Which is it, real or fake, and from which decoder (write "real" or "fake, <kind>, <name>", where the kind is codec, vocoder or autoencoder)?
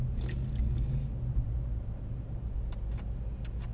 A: real